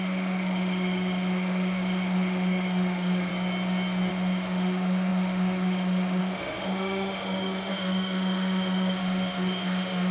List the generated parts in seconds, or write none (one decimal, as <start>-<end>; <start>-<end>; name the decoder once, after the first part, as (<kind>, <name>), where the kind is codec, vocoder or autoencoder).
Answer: 0.0-3.3 (autoencoder, DAC-VAE); 4.1-10.1